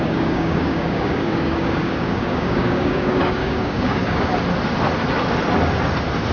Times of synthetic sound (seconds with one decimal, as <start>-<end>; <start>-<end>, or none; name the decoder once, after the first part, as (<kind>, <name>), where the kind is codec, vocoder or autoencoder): 0.0-4.3 (codec, DAC)